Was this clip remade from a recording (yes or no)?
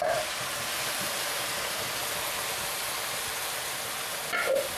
no